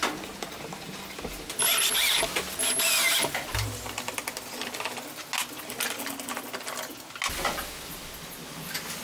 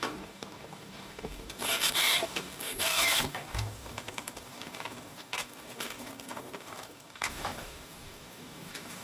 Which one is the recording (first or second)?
first